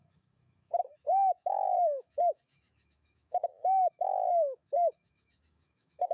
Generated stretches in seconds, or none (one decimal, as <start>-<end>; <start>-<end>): 0.0-6.1